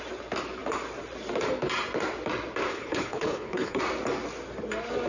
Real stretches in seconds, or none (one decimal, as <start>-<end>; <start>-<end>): 0.0-2.7; 3.8-5.1